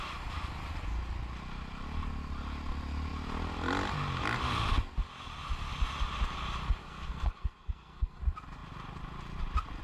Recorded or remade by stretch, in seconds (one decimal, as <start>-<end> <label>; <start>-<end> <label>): 0.0-6.8 recorded; 6.8-8.2 remade; 8.2-9.8 recorded